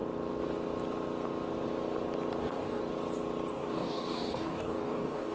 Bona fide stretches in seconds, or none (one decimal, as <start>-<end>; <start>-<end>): 0.0-2.4; 2.8-3.5